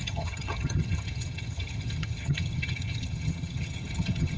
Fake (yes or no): yes